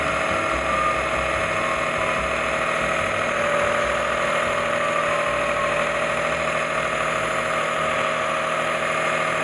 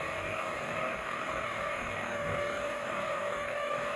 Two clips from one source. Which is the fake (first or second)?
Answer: second